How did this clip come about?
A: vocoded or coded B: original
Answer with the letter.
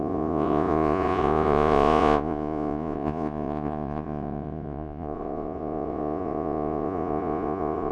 A